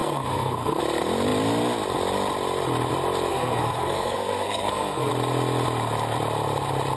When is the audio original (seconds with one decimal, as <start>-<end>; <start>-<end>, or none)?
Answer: 0.8-3.3; 5.1-7.0